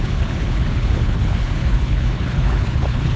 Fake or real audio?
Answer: fake